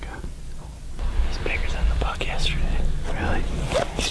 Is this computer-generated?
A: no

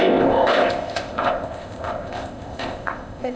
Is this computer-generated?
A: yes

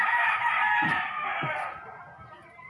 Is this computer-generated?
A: no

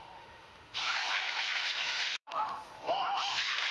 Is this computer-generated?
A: yes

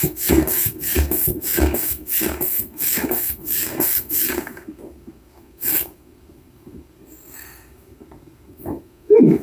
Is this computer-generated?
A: yes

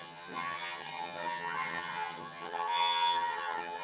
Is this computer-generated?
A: yes